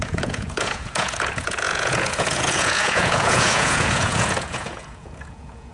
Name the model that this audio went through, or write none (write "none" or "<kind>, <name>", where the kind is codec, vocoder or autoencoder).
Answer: vocoder, Vocos